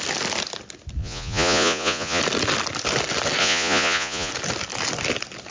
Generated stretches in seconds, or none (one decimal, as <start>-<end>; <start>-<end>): 1.0-2.2; 3.4-4.3